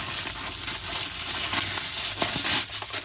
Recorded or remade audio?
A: recorded